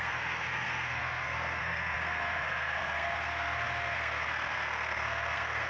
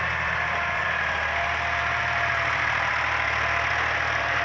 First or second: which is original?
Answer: second